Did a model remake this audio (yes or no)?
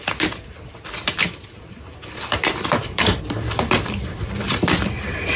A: yes